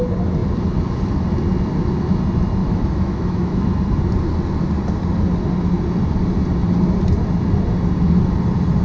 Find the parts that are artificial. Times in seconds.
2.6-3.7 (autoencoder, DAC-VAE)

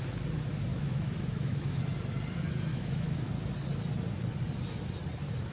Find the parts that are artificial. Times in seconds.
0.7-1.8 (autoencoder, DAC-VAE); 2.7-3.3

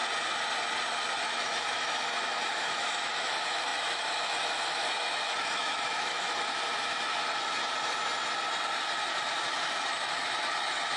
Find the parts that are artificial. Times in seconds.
1.2-7.1 (autoencoder, DAC-VAE); 9.5-11.0

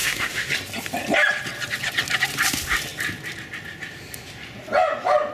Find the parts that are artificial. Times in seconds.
0.0-0.5 (autoencoder, DAC-VAE)

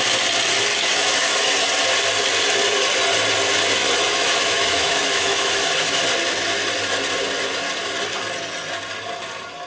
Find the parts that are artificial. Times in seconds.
0.7-1.5 (autoencoder, DAC-VAE); 3.8-6.0